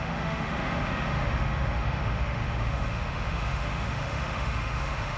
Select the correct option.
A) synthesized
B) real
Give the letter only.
A